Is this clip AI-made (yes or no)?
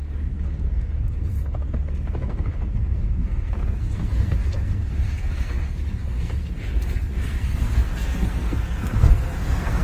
yes